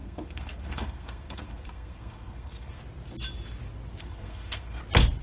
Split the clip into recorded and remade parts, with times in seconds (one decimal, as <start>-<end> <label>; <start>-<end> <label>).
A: 0.0-2.8 remade; 2.8-4.0 recorded; 4.0-4.8 remade; 4.8-5.2 recorded